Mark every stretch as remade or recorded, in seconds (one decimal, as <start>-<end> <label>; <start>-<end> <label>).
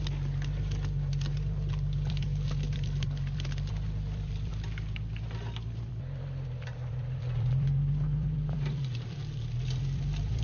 0.0-4.5 remade; 4.5-5.9 recorded; 5.9-10.4 remade